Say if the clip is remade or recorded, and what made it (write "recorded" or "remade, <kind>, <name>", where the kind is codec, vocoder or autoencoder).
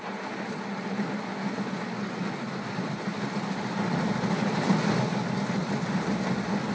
recorded